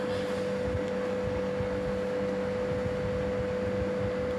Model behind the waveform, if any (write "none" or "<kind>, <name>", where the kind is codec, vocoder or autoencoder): none